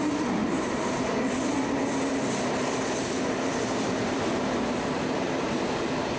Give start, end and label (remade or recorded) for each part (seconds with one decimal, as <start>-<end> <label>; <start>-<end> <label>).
0.0-0.4 recorded; 0.4-1.2 remade; 1.2-2.1 recorded; 2.1-5.8 remade; 5.8-6.2 recorded